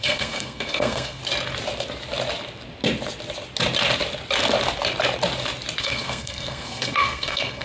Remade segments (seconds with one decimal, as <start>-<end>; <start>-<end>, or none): 0.0-1.2; 5.8-7.6